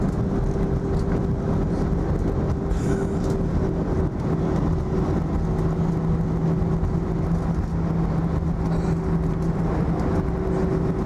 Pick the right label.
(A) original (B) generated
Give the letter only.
A